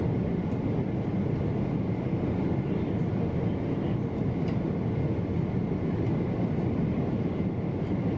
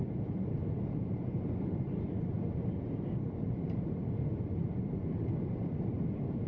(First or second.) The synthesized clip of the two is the second